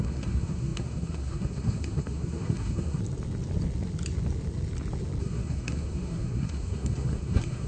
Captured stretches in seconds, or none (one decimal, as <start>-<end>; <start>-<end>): 3.0-5.2